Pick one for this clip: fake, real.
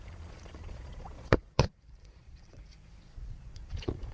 fake